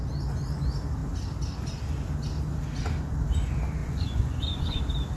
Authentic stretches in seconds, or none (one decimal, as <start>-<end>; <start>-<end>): 0.0-3.8; 4.8-5.2